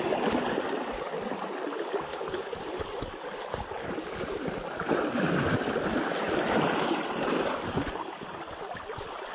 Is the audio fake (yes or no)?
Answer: no